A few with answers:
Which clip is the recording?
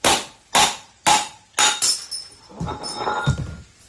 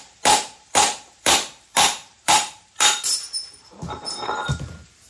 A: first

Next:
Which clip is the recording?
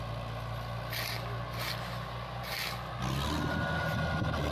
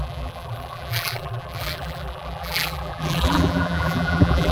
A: first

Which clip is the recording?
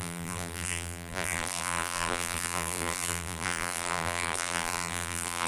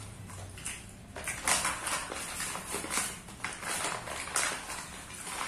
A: second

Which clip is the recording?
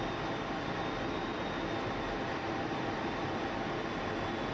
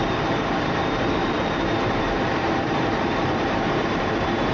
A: first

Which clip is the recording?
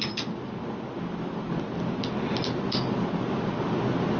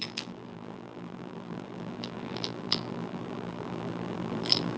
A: first